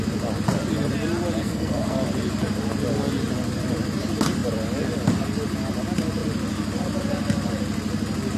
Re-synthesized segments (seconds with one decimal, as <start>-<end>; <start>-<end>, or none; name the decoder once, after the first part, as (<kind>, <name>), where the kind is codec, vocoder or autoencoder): 1.4-2.0 (codec, SNAC)